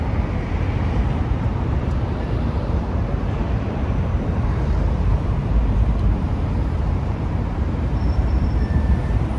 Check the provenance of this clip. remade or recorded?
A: remade